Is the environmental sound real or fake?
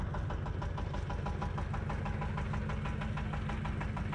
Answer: real